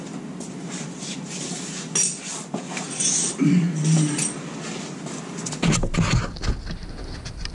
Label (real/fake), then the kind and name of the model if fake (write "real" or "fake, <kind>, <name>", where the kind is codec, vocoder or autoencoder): real